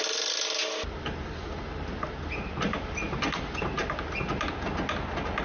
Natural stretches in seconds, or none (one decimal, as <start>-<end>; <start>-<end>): 0.0-5.4